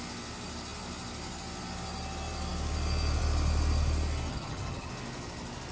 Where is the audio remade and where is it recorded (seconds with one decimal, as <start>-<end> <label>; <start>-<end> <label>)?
0.0-4.3 recorded; 4.3-4.9 remade; 4.9-5.7 recorded